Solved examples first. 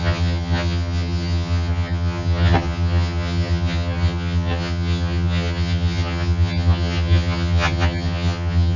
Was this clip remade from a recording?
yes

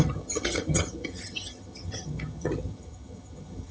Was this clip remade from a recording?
yes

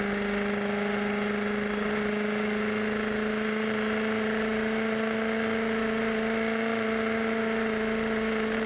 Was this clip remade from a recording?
no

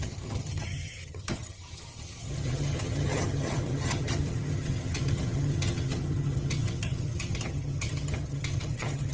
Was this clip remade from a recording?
yes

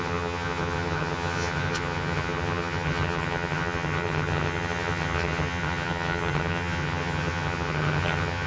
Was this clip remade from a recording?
yes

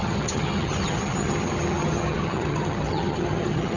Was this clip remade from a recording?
yes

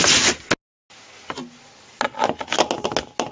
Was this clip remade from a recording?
no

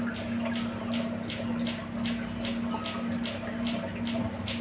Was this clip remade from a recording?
no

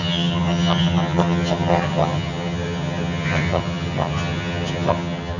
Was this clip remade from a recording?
yes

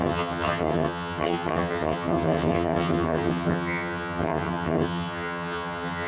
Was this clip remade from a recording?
yes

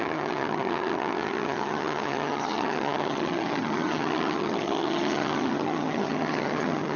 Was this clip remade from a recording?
yes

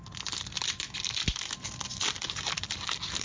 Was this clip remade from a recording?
no